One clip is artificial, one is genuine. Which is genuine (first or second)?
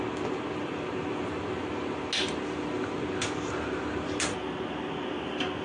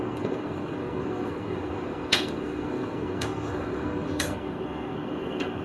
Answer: first